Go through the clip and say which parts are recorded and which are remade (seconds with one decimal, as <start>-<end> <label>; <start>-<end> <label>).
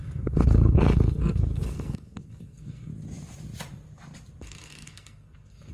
0.0-2.9 remade; 2.9-4.4 recorded; 4.4-5.7 remade